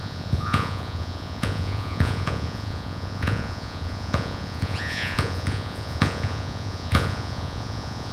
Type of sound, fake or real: fake